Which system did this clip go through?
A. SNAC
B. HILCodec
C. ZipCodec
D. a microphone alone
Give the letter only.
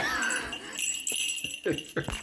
D